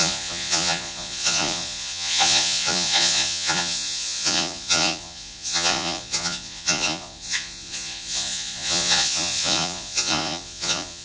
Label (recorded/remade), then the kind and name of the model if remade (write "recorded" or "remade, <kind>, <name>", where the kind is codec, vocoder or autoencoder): remade, vocoder, Vocos